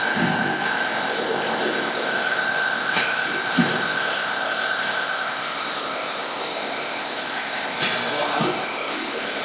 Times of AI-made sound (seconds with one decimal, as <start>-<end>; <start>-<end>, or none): 0.0-7.8; 8.4-9.4